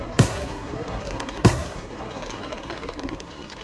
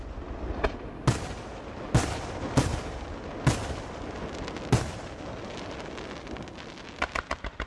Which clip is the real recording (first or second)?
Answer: second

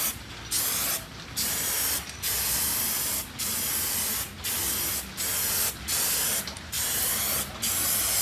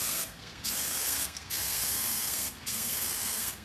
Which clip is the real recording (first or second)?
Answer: first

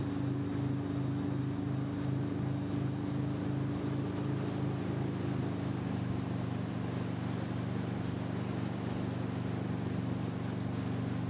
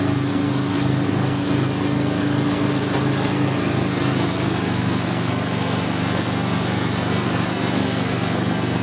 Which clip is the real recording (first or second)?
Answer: first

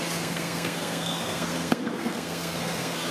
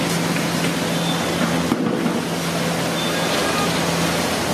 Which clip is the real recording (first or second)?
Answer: second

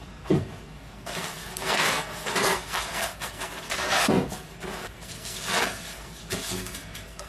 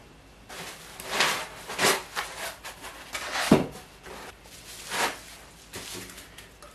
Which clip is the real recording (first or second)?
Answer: second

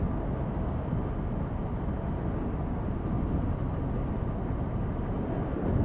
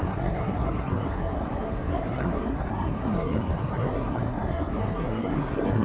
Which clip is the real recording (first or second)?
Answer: first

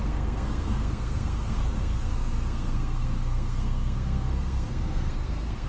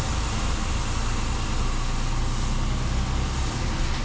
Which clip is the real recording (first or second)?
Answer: second